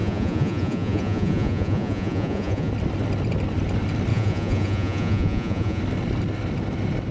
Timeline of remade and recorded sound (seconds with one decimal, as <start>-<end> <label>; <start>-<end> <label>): 0.0-2.7 remade; 2.7-4.1 recorded; 4.1-5.8 remade; 5.8-7.1 recorded